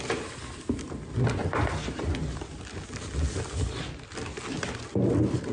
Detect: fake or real real